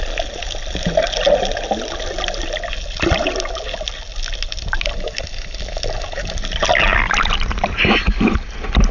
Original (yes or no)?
yes